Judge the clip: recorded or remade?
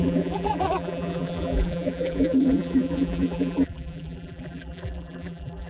remade